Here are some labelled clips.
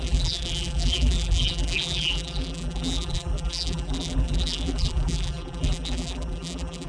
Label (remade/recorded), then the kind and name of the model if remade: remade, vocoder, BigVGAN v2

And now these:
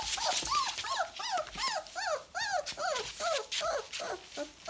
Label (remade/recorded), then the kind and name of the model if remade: recorded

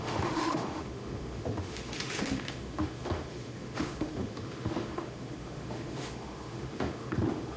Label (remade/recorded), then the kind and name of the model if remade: remade, autoencoder, DAC-VAE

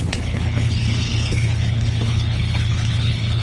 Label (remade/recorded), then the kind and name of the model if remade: remade, codec, HILCodec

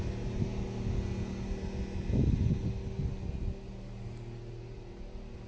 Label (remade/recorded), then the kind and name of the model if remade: recorded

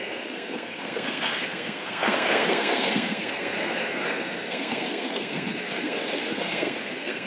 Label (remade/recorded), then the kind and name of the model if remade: remade, codec, SNAC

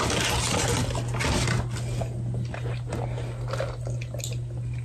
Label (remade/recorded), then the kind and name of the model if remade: recorded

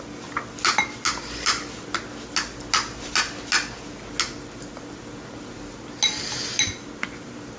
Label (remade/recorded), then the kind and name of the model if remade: recorded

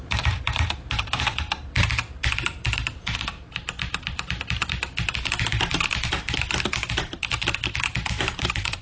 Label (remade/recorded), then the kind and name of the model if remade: remade, vocoder, BigVGAN v2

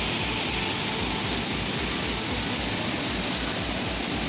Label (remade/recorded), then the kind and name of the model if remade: recorded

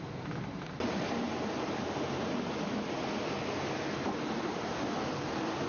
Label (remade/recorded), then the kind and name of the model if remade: recorded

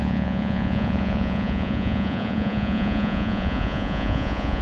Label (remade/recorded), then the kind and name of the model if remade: remade, vocoder, Vocos